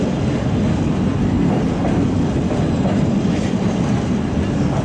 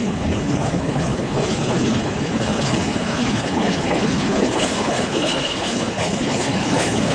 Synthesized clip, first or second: second